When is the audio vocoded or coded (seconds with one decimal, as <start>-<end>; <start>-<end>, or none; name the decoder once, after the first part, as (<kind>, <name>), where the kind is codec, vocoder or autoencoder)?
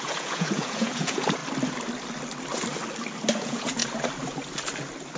0.0-1.4 (vocoder, Vocos); 3.4-3.8